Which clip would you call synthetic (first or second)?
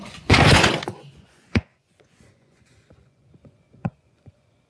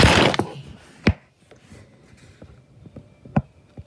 first